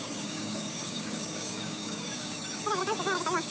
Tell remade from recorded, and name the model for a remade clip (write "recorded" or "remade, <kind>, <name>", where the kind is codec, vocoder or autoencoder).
remade, codec, DAC